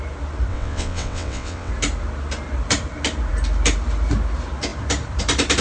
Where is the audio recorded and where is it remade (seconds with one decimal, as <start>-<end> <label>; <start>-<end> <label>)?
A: 0.0-0.5 recorded; 0.5-1.7 remade; 1.7-5.6 recorded

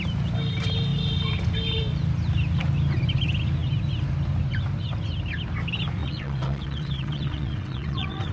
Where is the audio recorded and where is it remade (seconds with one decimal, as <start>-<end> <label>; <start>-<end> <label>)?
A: 0.0-6.0 recorded; 6.0-8.3 remade

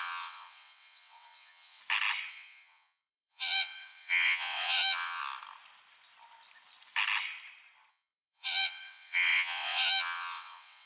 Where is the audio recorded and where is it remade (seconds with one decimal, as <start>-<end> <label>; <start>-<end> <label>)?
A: 0.0-1.8 remade; 1.8-2.3 recorded; 2.3-5.2 remade; 5.2-7.9 recorded; 7.9-10.9 remade

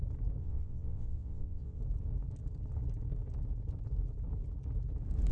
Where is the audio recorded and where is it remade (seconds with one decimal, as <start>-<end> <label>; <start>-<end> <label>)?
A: 0.0-0.4 recorded; 0.4-1.8 remade; 1.8-5.3 recorded

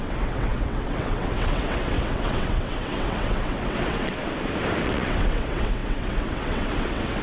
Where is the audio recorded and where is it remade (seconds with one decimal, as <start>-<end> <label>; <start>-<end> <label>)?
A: 0.0-4.2 remade; 4.2-4.8 recorded; 4.8-7.2 remade

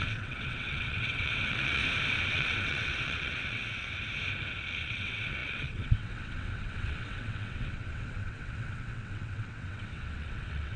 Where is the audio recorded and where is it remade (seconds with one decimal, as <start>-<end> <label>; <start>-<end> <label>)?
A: 0.0-1.8 remade; 1.8-2.3 recorded; 2.3-3.9 remade; 3.9-4.8 recorded; 4.8-10.8 remade

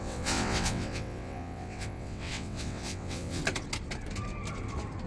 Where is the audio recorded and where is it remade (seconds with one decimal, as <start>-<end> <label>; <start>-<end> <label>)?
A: 0.0-3.4 remade; 3.4-5.1 recorded